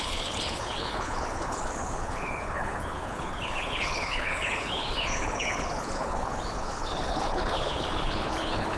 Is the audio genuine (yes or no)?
no